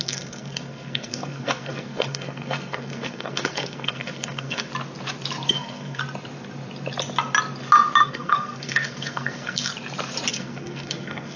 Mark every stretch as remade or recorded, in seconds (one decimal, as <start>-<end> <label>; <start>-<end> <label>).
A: 0.0-4.7 remade; 4.7-5.5 recorded; 5.5-6.0 remade; 6.0-8.0 recorded; 8.0-9.7 remade; 9.7-10.3 recorded; 10.3-11.4 remade